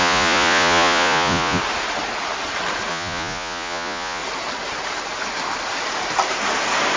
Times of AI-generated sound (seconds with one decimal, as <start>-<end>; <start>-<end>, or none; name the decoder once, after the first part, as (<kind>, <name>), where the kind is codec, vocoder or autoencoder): 0.0-1.6 (vocoder, Vocos); 2.9-4.2

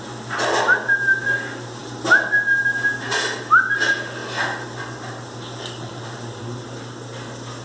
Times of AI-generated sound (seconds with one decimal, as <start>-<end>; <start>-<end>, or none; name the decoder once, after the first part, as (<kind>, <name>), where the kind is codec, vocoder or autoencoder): none

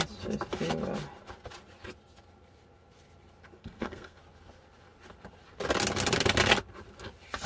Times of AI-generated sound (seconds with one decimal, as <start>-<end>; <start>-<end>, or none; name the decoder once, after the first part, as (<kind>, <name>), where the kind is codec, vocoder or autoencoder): 3.6-4.2 (codec, SNAC)